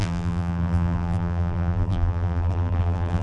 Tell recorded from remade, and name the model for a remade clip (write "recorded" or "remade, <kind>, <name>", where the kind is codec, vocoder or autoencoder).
remade, vocoder, BigVGAN v2